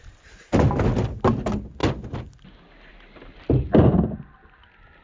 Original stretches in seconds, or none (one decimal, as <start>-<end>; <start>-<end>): 0.0-5.0